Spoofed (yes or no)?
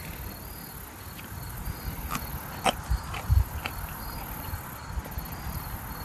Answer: no